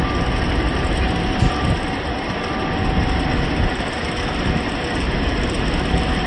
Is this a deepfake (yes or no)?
no